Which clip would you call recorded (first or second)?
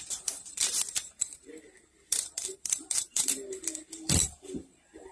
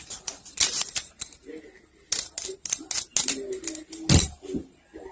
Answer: second